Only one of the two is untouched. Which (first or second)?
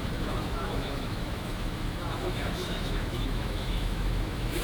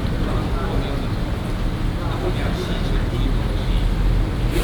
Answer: second